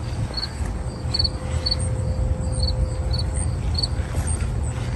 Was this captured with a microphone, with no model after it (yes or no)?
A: yes